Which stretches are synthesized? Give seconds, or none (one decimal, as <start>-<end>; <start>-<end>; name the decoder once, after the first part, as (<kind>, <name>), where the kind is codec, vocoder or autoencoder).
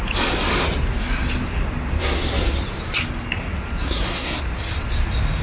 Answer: 3.8-4.4 (codec, SNAC)